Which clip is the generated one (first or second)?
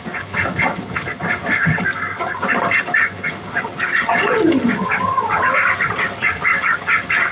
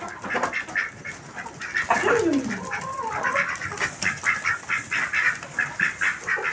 first